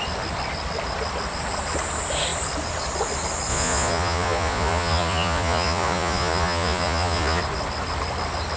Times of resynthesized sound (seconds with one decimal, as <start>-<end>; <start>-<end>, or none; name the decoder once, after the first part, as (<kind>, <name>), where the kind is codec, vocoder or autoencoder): 3.5-7.4 (vocoder, Vocos)